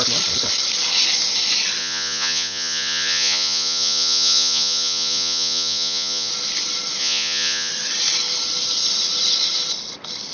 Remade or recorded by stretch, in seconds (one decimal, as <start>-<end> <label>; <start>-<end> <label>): 0.0-1.8 recorded; 1.8-6.3 remade; 6.3-7.0 recorded; 7.0-7.7 remade; 7.7-10.3 recorded